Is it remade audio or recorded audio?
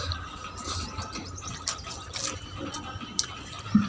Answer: remade